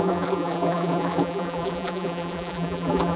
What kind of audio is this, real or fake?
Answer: fake